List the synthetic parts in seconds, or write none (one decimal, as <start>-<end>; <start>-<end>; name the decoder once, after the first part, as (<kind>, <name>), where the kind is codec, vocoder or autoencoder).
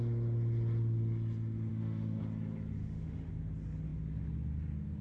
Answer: 1.7-2.2 (autoencoder, DAC-VAE); 2.8-3.3